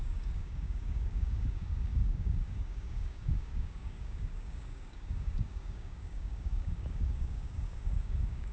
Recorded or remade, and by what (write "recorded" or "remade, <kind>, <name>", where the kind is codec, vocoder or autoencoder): remade, codec, DAC